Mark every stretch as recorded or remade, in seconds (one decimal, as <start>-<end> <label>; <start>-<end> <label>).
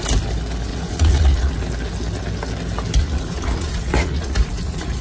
0.0-0.7 recorded; 0.7-1.5 remade; 1.5-3.0 recorded; 3.0-5.0 remade